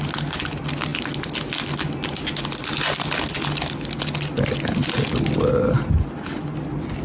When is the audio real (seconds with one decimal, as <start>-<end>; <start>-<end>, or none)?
0.0-7.0